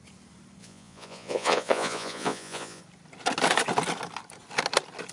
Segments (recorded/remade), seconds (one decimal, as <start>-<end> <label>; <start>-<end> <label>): 0.0-0.6 recorded; 0.6-2.8 remade; 2.8-5.1 recorded